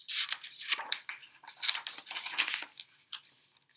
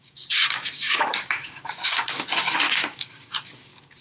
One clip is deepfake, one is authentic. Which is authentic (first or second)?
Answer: first